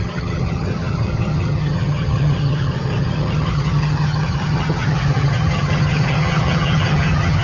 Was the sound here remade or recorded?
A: remade